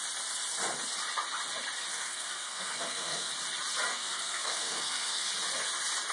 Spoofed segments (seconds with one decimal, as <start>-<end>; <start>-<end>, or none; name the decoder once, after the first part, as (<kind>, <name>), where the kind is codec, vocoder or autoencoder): 1.9-3.3 (codec, SNAC); 3.9-5.3